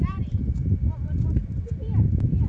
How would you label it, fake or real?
fake